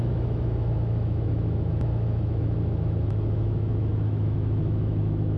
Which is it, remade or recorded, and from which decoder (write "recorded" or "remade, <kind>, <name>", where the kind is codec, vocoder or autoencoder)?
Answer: remade, autoencoder, DAC-VAE